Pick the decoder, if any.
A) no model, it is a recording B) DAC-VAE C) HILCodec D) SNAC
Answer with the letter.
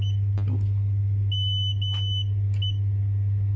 A